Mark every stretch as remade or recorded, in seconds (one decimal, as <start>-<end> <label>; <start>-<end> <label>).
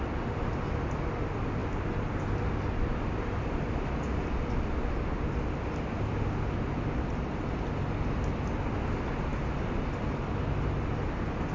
0.0-11.5 recorded